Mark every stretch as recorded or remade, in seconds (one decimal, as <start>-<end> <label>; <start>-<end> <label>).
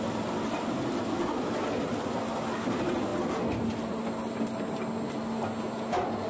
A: 0.0-6.3 recorded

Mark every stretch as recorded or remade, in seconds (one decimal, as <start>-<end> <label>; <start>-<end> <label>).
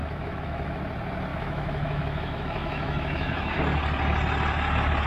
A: 0.0-0.8 remade; 0.8-1.3 recorded; 1.3-3.6 remade; 3.6-5.1 recorded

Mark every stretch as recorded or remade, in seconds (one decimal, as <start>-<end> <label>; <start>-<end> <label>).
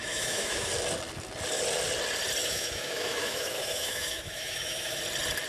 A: 0.0-0.7 remade; 0.7-2.4 recorded; 2.4-5.0 remade; 5.0-5.5 recorded